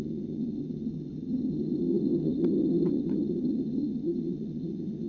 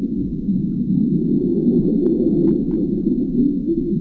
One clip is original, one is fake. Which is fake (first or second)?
first